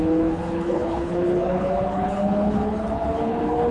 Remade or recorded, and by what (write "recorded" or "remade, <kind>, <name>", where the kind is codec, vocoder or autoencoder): remade, codec, HILCodec